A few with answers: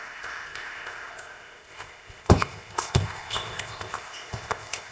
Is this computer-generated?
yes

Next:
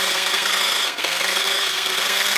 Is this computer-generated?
yes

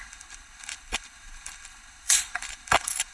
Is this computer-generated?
yes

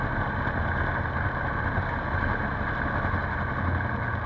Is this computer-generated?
no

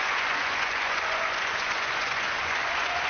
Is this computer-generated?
yes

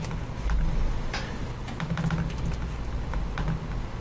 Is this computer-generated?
no